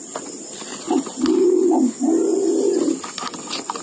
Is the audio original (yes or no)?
yes